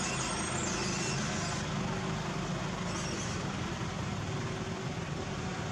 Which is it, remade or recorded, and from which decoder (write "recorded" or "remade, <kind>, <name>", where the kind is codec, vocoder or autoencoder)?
recorded